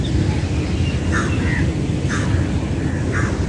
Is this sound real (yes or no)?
yes